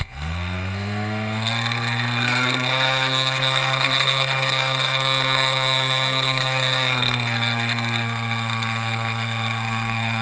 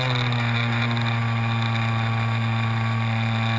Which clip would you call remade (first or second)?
first